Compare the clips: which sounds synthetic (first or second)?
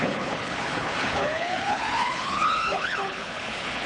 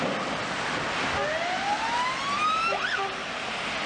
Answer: first